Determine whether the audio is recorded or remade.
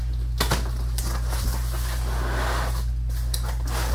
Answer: recorded